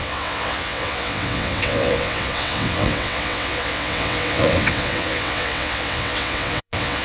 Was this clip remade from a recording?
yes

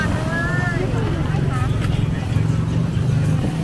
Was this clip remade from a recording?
no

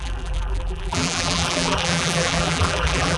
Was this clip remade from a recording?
yes